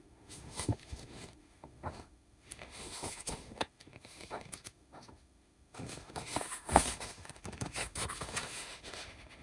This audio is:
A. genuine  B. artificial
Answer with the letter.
B